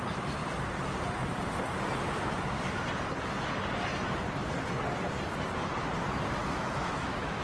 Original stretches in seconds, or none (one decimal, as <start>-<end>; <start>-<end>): 0.0-6.4